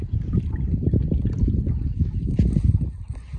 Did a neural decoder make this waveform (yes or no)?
no